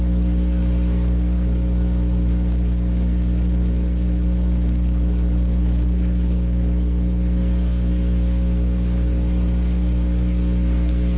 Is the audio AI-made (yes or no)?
yes